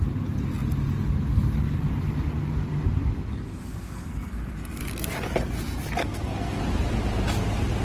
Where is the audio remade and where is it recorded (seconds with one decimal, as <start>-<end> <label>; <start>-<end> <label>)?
0.0-3.6 recorded; 3.6-4.8 remade; 4.8-6.0 recorded; 6.0-6.6 remade; 6.6-7.8 recorded